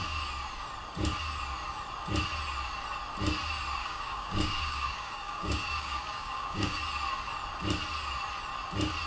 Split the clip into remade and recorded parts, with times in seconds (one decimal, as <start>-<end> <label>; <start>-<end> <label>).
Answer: 0.0-3.8 recorded; 3.8-6.8 remade; 6.8-9.1 recorded